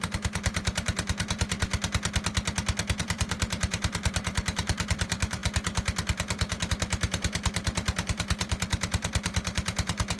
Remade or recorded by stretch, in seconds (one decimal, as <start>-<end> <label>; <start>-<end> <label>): 0.0-1.7 remade; 1.7-3.0 recorded; 3.0-10.2 remade